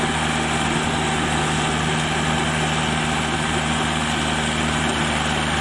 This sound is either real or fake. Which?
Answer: real